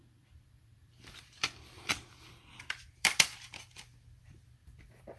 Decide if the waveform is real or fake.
fake